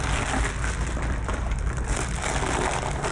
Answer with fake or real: real